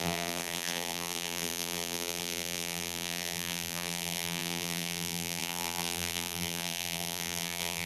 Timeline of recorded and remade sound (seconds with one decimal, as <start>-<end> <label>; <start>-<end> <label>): 0.0-7.9 remade